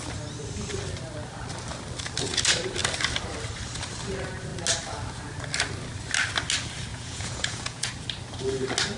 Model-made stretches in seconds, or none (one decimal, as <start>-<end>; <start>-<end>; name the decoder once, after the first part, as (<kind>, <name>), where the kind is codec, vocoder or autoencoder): 6.9-7.9 (vocoder, Vocos)